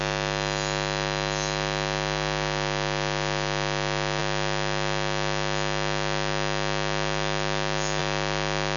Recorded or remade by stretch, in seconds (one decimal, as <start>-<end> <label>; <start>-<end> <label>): 0.0-8.8 recorded